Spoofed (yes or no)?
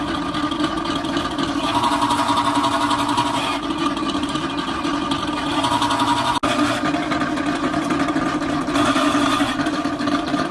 no